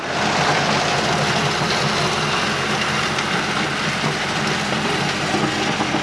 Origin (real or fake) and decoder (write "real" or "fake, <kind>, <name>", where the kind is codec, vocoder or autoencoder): real